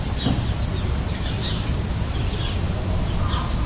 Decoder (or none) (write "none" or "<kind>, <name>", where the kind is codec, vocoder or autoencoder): none